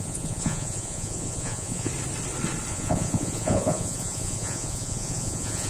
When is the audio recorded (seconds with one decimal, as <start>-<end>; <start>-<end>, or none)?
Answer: 1.9-2.7